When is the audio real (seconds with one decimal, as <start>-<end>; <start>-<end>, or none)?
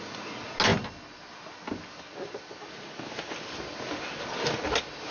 0.0-5.1